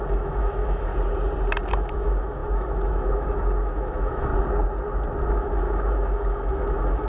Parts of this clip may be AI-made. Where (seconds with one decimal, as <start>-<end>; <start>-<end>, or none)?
0.0-0.9; 1.7-4.3; 5.3-7.1

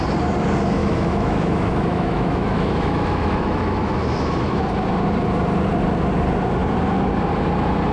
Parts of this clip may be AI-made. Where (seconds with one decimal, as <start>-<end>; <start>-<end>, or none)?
0.8-4.6

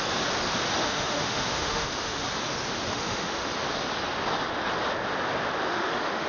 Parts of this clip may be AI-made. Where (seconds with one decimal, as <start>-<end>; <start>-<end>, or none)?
0.8-2.2; 2.9-3.5; 5.7-6.3

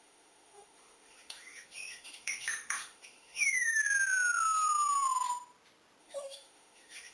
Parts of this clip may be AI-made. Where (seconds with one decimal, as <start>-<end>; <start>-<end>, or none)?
0.0-3.8; 6.0-7.1

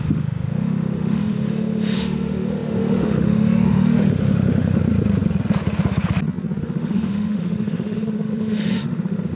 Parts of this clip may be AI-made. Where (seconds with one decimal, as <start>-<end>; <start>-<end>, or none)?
0.0-4.8; 6.6-9.4

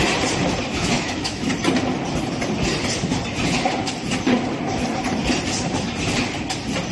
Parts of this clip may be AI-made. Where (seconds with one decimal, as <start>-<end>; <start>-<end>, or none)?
0.7-1.5

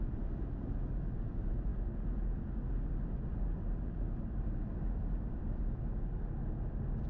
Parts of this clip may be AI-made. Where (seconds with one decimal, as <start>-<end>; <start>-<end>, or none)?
none

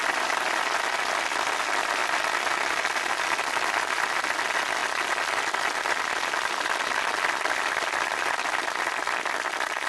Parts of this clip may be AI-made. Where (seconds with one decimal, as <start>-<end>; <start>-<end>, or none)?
none